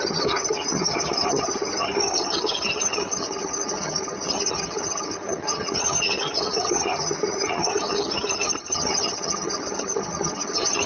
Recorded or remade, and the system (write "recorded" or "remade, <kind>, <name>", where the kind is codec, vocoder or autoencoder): remade, vocoder, HiFi-GAN